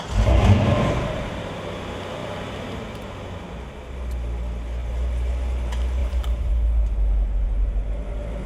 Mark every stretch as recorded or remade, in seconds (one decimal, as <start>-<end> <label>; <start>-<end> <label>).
0.0-0.7 recorded; 0.7-1.3 remade; 1.3-2.2 recorded; 2.2-2.8 remade; 2.8-6.0 recorded; 6.0-6.5 remade; 6.5-8.5 recorded